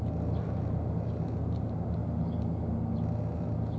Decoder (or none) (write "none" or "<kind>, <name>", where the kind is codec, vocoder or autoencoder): none